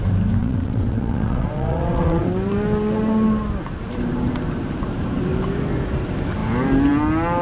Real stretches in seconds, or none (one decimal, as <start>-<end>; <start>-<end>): 0.0-0.4; 2.2-7.4